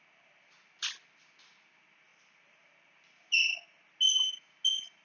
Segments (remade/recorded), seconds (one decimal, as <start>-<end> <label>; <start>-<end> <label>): 0.0-5.0 recorded